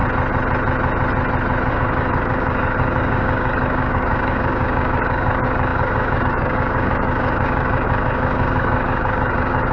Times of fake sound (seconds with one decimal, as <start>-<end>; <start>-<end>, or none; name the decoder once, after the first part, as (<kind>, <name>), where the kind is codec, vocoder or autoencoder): 1.7-9.7 (codec, DAC)